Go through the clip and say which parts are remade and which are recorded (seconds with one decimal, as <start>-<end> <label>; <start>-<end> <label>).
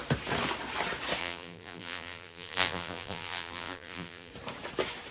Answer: 0.0-1.2 recorded; 1.2-4.3 remade; 4.3-5.1 recorded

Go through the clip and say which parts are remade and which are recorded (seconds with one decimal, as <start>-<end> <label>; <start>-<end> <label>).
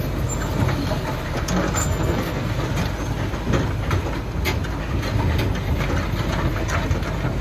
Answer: 0.0-1.8 recorded; 1.8-2.5 remade; 2.5-7.4 recorded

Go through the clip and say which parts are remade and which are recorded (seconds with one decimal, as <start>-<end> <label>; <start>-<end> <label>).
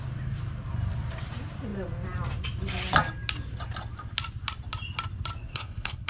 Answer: 0.0-5.5 recorded; 5.5-6.1 remade